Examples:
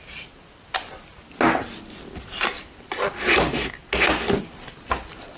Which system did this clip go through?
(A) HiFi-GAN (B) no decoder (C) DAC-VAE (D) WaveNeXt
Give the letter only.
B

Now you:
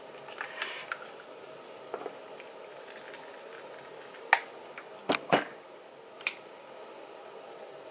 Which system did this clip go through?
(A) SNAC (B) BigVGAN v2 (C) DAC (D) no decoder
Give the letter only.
D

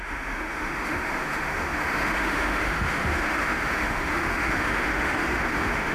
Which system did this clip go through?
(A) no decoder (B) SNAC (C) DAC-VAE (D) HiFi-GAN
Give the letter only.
C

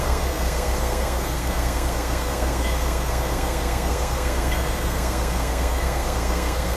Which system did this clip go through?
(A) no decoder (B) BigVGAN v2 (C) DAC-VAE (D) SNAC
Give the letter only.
D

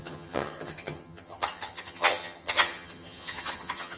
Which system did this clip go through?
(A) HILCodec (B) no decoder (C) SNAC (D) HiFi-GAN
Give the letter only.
D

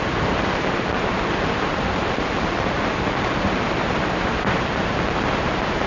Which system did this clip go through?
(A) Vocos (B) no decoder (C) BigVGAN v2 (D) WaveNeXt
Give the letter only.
C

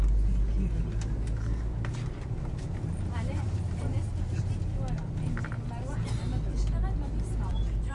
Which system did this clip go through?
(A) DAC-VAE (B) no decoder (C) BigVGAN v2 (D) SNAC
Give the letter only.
B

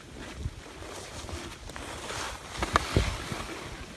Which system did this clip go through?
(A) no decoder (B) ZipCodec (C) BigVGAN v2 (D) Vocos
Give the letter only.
A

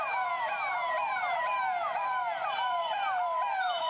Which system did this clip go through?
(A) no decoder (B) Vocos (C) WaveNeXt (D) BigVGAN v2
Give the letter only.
D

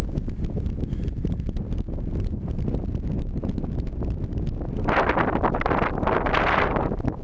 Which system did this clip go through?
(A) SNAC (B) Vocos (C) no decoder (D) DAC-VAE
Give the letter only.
C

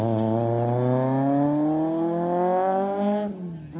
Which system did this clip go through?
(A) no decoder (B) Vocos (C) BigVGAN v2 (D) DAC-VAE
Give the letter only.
A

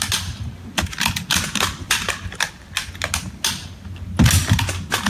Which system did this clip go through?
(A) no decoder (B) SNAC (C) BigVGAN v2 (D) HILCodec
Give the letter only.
A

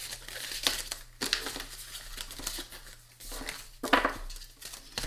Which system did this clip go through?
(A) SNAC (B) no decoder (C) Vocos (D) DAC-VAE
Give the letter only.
B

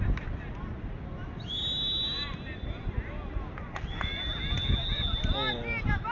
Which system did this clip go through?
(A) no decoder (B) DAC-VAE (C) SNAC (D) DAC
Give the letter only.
A